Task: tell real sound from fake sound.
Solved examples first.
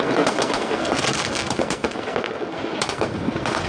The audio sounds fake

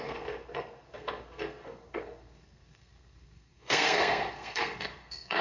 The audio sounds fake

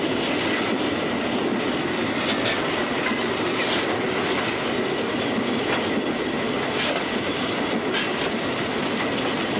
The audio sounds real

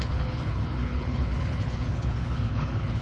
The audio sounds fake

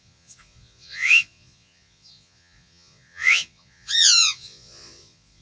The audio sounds fake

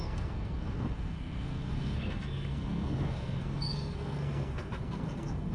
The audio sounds fake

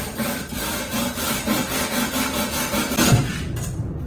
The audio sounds real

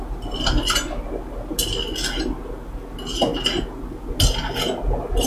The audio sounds real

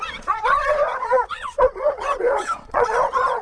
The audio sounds fake